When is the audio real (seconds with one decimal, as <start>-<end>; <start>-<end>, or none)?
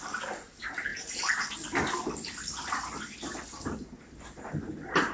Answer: 0.0-5.1